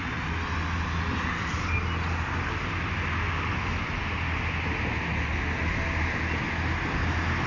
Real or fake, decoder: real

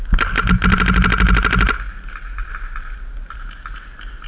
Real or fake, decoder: real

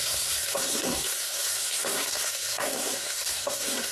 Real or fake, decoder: fake, codec, SNAC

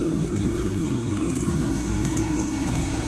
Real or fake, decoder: fake, codec, SNAC